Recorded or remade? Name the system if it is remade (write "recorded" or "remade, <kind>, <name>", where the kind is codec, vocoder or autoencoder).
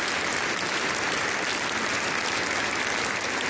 recorded